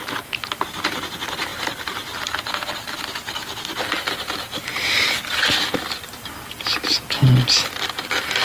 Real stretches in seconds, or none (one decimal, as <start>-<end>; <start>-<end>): 0.0-1.5; 2.4-8.4